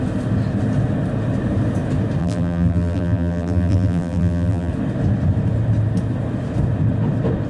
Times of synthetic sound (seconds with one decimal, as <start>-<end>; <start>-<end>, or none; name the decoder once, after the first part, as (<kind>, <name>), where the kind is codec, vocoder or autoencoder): 2.2-4.7 (vocoder, BigVGAN v2)

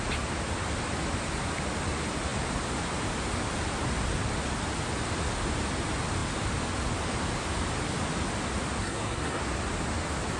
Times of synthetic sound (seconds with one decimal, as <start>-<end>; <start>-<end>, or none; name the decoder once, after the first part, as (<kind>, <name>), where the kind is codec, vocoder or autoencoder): 8.8-9.4 (codec, SNAC)

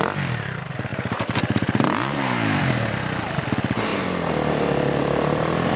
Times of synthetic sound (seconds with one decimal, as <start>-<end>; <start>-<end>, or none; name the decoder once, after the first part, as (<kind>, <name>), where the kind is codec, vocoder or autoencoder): 0.9-2.6 (vocoder, BigVGAN v2)

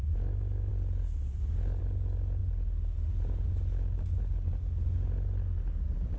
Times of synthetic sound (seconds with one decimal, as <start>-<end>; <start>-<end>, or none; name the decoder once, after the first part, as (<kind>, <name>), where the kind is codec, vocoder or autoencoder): none